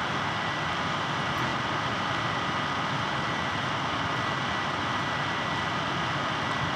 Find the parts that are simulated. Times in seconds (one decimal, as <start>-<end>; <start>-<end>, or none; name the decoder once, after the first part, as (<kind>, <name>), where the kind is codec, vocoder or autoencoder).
none